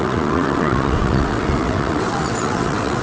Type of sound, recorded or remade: remade